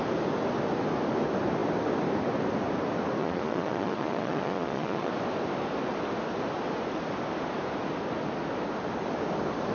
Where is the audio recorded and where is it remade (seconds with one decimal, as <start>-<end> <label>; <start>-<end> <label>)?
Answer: 0.0-3.2 recorded; 3.2-5.1 remade; 5.1-9.7 recorded